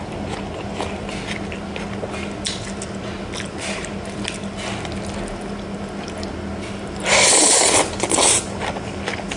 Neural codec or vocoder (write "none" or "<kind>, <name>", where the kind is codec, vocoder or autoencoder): none